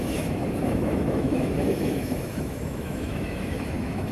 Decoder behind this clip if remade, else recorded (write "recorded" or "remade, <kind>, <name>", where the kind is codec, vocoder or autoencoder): remade, autoencoder, DAC-VAE